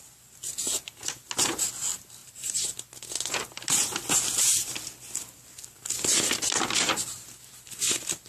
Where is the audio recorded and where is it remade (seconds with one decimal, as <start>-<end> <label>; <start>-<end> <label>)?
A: 0.0-2.2 recorded; 2.2-2.7 remade; 2.7-8.3 recorded